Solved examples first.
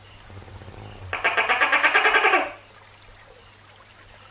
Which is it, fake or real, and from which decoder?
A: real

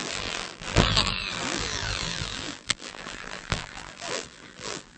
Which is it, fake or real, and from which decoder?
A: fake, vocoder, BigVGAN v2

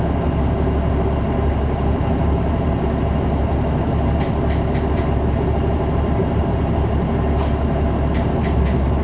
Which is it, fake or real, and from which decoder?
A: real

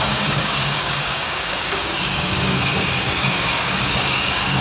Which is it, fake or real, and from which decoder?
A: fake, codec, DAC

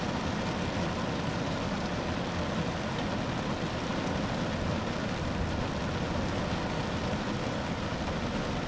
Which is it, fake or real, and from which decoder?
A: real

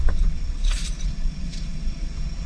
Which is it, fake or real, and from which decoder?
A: fake, vocoder, Vocos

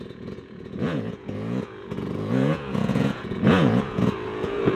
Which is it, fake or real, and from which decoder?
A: fake, vocoder, Vocos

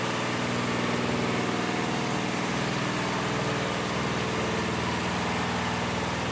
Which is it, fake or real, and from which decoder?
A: real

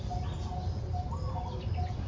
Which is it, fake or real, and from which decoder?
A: real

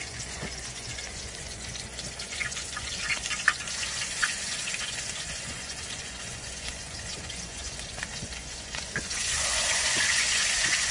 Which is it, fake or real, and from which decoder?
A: fake, vocoder, Vocos